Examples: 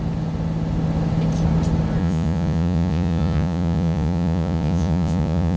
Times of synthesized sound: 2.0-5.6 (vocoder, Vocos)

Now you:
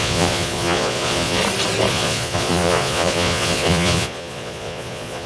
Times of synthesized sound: 0.0-1.4 (vocoder, Vocos); 1.9-5.3

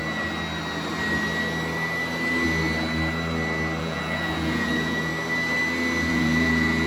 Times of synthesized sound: 3.8-5.1 (vocoder, Vocos); 6.1-6.9

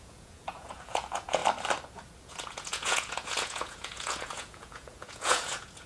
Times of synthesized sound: 0.0-1.4 (vocoder, Vocos); 2.2-5.9